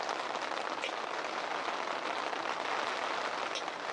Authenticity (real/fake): real